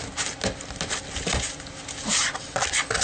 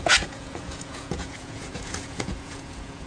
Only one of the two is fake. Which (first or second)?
second